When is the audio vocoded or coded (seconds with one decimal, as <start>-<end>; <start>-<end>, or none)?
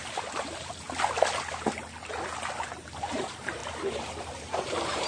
3.1-3.6; 4.3-5.1